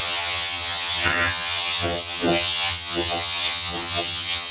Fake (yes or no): yes